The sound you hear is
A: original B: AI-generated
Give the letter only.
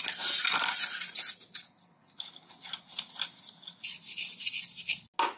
A